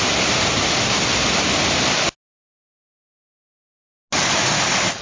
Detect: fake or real real